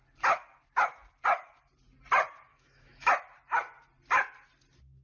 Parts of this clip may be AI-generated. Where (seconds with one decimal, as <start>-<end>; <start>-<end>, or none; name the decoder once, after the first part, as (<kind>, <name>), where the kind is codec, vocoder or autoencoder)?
2.5-3.1 (autoencoder, DAC-VAE)